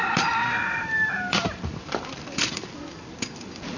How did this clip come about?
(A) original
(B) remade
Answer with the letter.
B